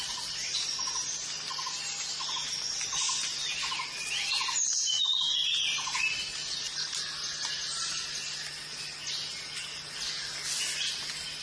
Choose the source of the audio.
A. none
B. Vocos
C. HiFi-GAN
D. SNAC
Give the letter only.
A